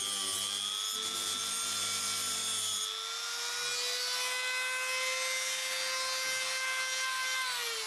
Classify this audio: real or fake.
real